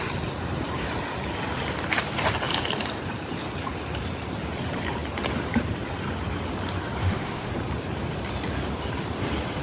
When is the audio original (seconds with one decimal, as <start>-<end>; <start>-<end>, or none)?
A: 0.0-7.0; 7.5-9.6